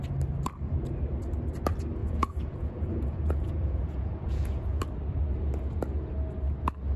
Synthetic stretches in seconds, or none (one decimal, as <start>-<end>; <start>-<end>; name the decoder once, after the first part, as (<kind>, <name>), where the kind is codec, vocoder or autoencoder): 2.0-4.8 (vocoder, Vocos)